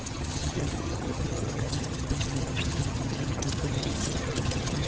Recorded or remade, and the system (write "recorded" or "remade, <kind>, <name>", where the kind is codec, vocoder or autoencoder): remade, vocoder, HiFi-GAN